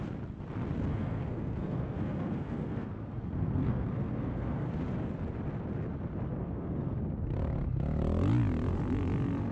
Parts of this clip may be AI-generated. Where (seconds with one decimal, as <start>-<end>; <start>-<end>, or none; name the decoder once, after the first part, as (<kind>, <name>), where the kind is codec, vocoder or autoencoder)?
0.9-4.7 (codec, SNAC); 6.4-7.0

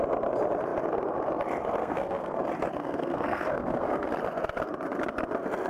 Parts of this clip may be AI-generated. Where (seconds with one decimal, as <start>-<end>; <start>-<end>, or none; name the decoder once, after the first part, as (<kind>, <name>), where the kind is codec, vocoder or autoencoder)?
1.8-2.4 (codec, SNAC); 2.8-4.1

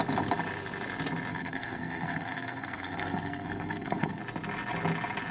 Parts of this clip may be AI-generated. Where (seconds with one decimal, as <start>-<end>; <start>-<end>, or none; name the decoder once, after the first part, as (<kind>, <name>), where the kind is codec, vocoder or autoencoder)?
1.3-4.2 (codec, SNAC)